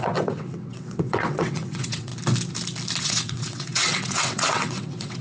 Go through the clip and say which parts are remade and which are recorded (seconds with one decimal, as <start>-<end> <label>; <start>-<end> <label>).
0.0-2.1 remade; 2.1-3.0 recorded; 3.0-5.2 remade